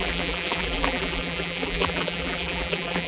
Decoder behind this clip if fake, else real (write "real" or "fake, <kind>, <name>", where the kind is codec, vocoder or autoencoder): fake, vocoder, BigVGAN v2